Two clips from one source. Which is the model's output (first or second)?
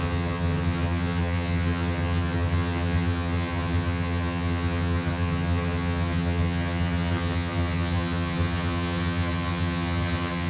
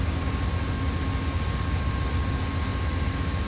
first